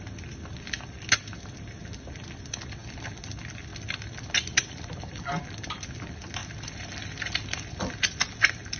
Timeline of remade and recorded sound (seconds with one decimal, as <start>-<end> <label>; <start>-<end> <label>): 0.0-3.7 recorded; 3.7-5.4 remade; 5.4-6.4 recorded; 6.4-8.2 remade; 8.2-8.8 recorded